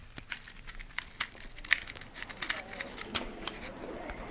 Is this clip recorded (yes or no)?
yes